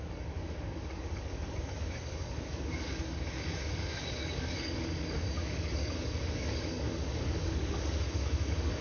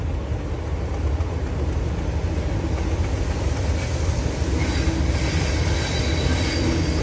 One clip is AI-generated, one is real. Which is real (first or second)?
second